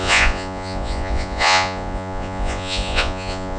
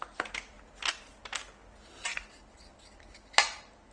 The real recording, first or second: second